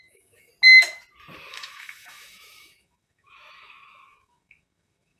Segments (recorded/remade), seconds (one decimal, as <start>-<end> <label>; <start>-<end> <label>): 0.0-0.5 remade; 0.5-1.5 recorded; 1.5-5.2 remade